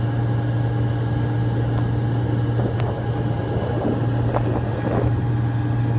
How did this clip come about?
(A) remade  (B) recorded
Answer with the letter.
B